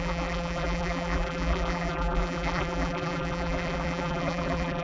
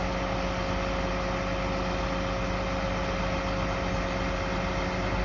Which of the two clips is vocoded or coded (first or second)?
first